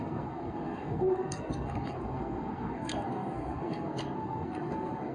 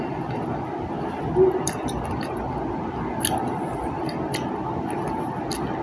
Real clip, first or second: second